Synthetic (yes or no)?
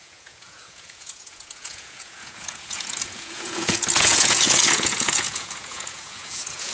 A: yes